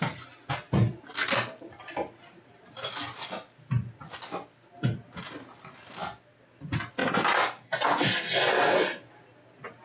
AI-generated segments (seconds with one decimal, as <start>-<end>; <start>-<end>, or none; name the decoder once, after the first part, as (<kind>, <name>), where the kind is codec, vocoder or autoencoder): 7.0-7.8 (vocoder, BigVGAN v2)